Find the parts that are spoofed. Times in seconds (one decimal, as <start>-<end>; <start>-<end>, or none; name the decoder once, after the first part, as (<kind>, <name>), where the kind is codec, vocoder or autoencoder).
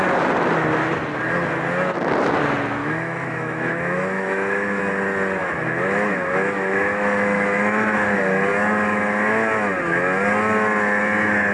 2.8-4.8 (autoencoder, DAC-VAE); 5.4-8.2